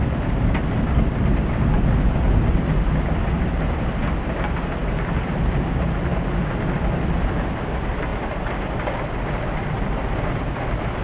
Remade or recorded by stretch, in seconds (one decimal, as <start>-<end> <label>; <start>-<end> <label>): 0.0-11.0 recorded